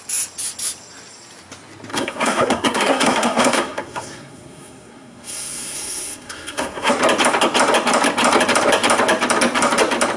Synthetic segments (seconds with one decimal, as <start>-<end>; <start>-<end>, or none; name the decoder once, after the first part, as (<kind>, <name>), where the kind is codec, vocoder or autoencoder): 1.9-6.9 (codec, SNAC)